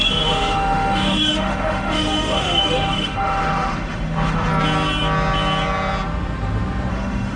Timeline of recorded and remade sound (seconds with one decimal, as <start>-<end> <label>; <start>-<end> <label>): 0.0-4.5 remade; 4.5-6.9 recorded; 6.9-7.4 remade